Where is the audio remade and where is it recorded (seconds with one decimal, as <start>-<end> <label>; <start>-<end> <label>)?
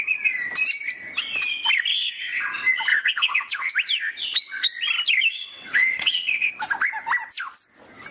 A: 0.0-1.9 recorded; 1.9-2.4 remade; 2.4-2.9 recorded; 2.9-3.7 remade; 3.7-5.3 recorded; 5.3-6.5 remade; 6.5-8.1 recorded